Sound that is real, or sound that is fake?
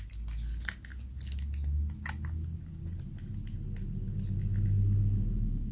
real